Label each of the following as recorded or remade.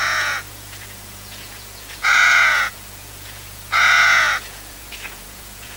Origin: remade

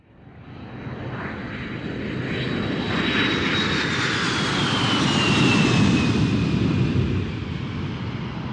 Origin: recorded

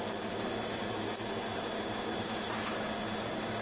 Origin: recorded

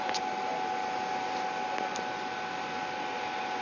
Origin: recorded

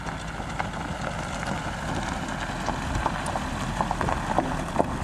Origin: recorded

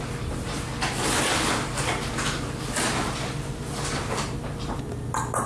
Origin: recorded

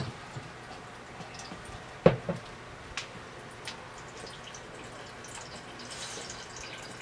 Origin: recorded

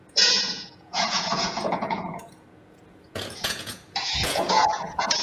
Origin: remade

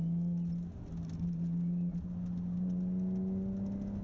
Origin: recorded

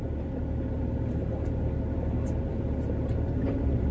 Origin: recorded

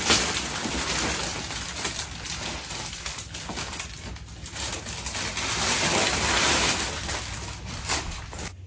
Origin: recorded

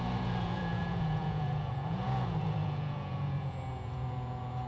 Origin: remade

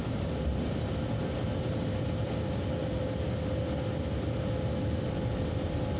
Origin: recorded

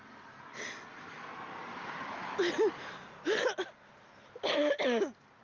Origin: recorded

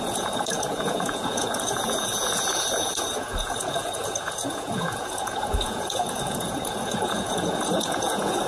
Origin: remade